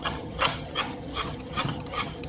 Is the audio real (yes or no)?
no